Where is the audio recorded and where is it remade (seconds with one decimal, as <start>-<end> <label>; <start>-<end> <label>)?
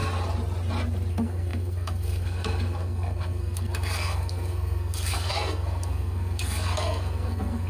0.0-1.1 recorded; 1.1-7.7 remade